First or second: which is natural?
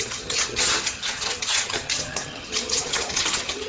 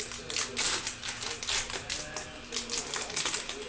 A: second